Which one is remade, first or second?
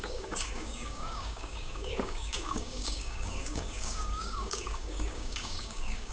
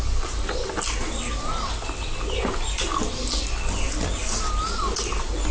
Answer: first